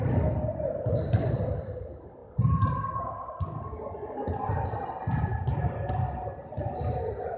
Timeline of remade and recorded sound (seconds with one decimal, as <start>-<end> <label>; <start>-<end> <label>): 0.0-7.4 recorded